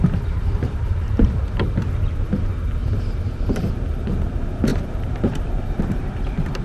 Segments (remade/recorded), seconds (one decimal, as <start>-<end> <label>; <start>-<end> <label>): 0.0-1.4 remade; 1.4-2.8 recorded; 2.8-3.7 remade; 3.7-4.7 recorded; 4.7-6.1 remade; 6.1-6.6 recorded